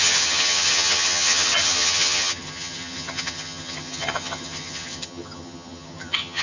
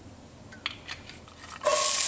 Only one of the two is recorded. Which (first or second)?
second